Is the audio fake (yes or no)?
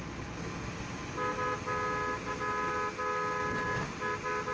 no